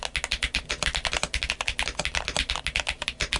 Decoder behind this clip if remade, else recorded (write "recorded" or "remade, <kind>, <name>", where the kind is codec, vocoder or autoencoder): recorded